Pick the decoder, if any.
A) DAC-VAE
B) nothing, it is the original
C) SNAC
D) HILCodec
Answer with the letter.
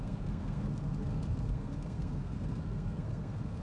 C